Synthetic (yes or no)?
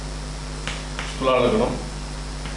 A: no